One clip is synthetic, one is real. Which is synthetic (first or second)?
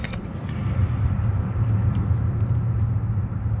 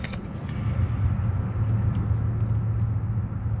first